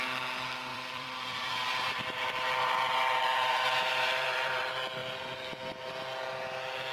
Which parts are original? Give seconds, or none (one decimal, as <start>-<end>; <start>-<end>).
0.0-0.7; 2.5-3.3; 4.6-6.9